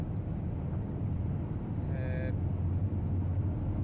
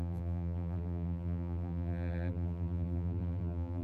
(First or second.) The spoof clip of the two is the second